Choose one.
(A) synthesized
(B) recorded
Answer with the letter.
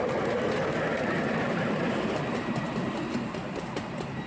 B